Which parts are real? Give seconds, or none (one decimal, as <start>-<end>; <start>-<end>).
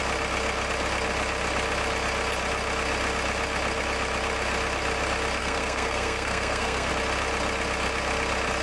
0.0-5.4; 6.9-8.6